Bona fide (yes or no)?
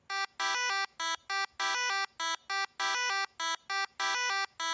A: yes